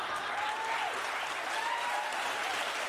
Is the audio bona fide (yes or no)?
yes